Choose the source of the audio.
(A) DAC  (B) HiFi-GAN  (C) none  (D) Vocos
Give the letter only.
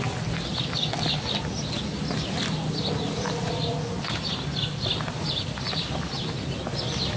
C